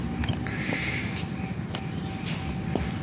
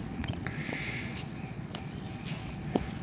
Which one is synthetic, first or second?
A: second